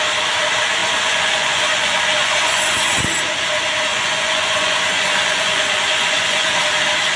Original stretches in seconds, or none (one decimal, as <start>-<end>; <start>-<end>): 0.0-0.8; 3.0-3.9; 6.6-7.2